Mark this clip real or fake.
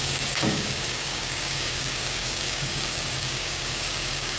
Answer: fake